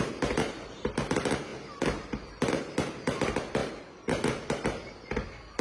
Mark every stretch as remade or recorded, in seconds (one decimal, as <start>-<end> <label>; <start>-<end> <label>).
0.0-5.6 recorded